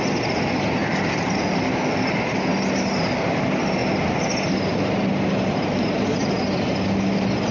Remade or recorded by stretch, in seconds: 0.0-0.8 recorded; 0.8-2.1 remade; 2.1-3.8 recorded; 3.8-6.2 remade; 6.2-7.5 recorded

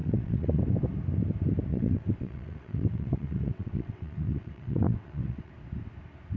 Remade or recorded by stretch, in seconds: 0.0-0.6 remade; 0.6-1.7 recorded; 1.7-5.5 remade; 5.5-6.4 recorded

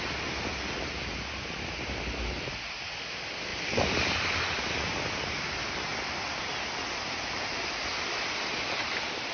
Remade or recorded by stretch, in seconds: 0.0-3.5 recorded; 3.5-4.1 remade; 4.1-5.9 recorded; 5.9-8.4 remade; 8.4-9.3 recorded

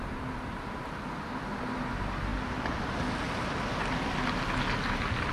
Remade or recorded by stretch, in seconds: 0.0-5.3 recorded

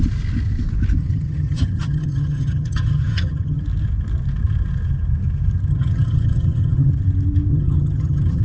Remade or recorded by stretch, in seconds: 0.0-1.0 recorded; 1.0-3.6 remade; 3.6-5.7 recorded; 5.7-6.9 remade; 6.9-7.5 recorded; 7.5-8.4 remade

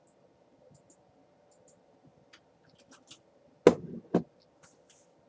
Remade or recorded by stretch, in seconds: 0.0-5.3 recorded

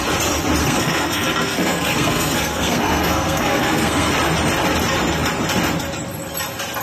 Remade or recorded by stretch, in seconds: 0.0-0.6 recorded; 0.6-4.1 remade; 4.1-6.8 recorded

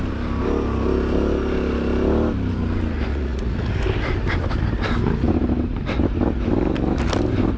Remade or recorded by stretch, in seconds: 0.0-3.1 recorded; 3.1-3.7 remade; 3.7-7.6 recorded